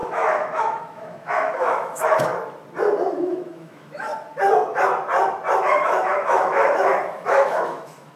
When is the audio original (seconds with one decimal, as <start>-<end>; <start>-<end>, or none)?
2.3-3.1; 4.1-5.6